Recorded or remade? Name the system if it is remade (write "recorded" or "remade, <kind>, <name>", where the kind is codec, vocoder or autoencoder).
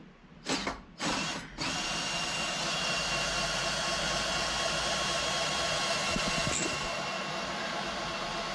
recorded